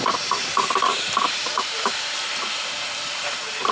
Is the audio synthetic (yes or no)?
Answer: yes